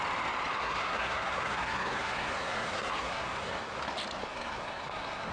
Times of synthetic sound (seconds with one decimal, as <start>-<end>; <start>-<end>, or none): 0.6-3.8; 4.2-5.3